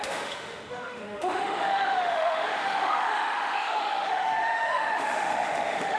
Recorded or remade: remade